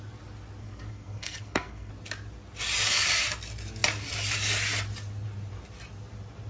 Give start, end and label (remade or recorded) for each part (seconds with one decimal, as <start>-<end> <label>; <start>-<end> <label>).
0.0-0.6 recorded; 0.6-1.9 remade; 1.9-6.5 recorded